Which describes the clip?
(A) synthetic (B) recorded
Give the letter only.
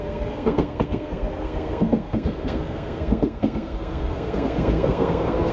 A